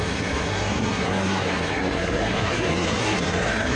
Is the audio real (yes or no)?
no